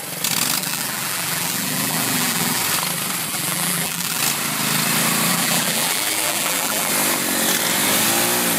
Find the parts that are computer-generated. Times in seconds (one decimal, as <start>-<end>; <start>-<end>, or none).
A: 0.6-2.6; 3.3-4.2; 5.3-6.9